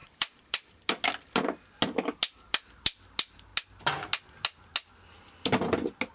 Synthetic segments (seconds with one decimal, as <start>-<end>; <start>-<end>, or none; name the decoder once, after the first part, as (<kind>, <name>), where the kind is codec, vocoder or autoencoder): 0.0-0.8 (vocoder, BigVGAN v2)